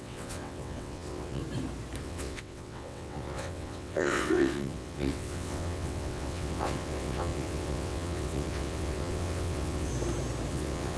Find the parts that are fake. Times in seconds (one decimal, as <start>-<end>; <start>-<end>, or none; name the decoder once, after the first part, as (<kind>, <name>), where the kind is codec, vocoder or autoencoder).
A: 0.0-1.4 (vocoder, WaveNeXt); 2.0-9.9; 10.5-11.0